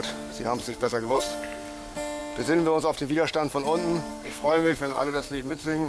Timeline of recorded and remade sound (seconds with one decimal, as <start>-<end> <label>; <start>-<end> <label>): 0.0-0.6 recorded; 0.6-1.2 remade; 1.2-4.1 recorded; 4.1-5.9 remade